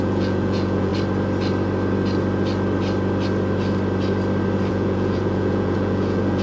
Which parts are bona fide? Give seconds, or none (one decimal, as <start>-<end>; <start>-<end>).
0.9-4.7